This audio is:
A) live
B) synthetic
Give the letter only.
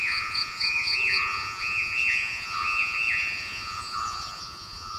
B